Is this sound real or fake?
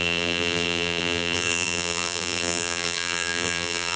fake